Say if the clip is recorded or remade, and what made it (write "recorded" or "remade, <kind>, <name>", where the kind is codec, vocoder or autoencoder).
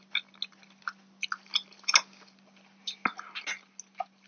recorded